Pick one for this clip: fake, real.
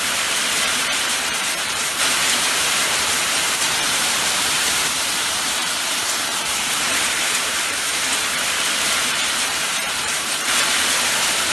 fake